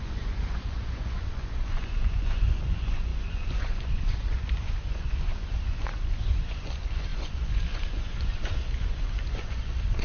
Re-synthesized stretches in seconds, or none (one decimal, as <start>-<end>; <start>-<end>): 0.0-10.0